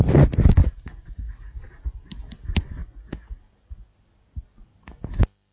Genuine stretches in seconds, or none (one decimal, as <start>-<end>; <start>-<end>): 0.0-0.6; 1.6-2.8; 3.4-5.5